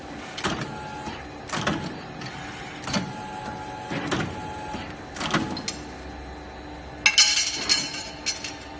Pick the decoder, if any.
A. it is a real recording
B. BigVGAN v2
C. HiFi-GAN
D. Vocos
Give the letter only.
A